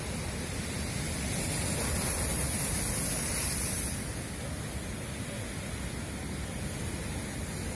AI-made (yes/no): no